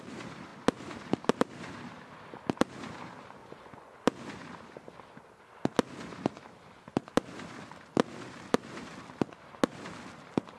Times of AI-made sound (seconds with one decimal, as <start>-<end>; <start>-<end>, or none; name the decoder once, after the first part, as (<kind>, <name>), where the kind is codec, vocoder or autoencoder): 3.4-3.9 (vocoder, Vocos)